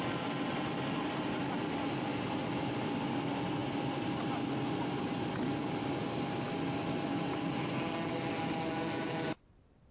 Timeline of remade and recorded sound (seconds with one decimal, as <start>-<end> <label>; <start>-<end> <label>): 0.0-9.9 recorded